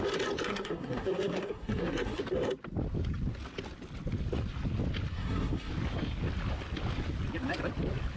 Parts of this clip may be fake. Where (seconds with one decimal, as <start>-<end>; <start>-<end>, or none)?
0.4-2.2; 5.1-5.7